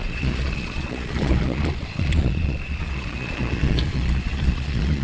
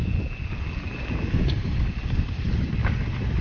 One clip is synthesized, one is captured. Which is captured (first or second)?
second